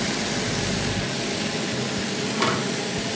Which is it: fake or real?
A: real